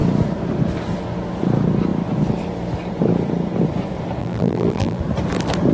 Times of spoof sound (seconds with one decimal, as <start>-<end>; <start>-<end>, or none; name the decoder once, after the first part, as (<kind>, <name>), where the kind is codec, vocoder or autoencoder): 4.2-5.0 (vocoder, BigVGAN v2)